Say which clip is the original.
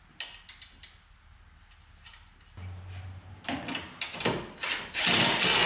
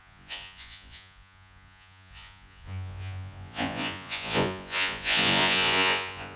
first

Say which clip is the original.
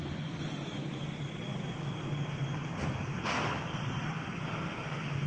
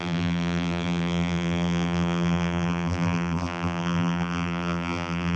first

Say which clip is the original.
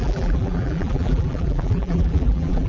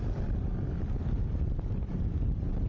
second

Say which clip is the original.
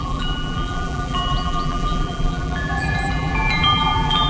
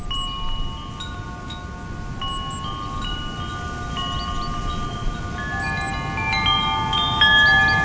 second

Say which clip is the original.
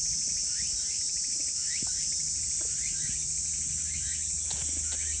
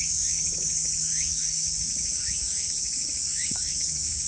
first